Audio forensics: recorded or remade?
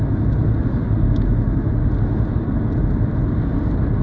recorded